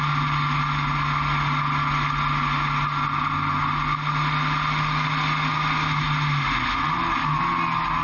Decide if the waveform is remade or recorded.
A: recorded